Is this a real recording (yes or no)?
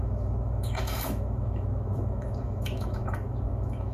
no